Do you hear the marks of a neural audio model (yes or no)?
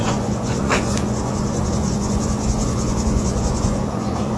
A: yes